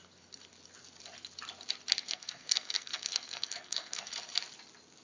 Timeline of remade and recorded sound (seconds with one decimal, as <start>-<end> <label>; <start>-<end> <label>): 0.0-2.0 recorded; 2.0-4.1 remade; 4.1-5.0 recorded